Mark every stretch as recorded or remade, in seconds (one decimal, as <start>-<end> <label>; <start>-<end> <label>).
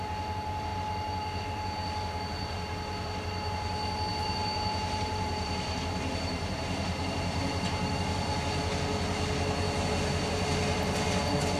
0.0-4.1 recorded; 4.1-7.9 remade; 7.9-11.6 recorded